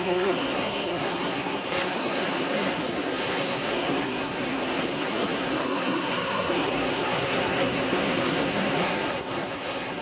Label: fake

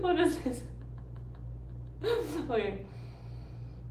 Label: real